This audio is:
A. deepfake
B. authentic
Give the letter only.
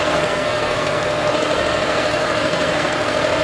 A